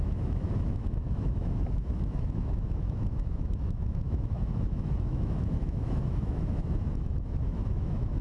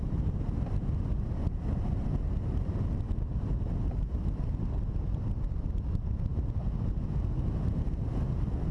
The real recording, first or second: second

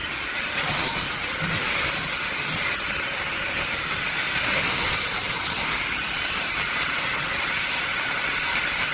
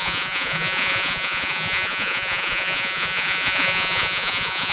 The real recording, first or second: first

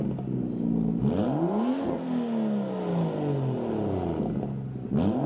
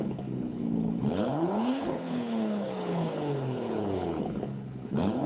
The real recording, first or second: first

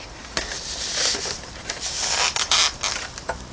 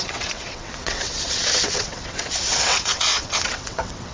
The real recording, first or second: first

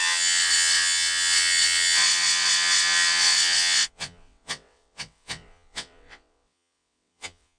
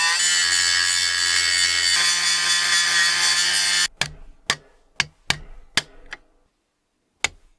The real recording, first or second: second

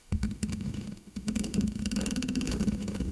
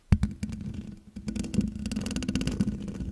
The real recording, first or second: second